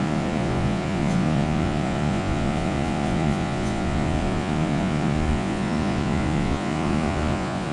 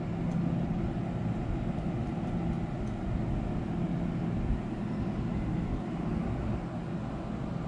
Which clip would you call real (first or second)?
second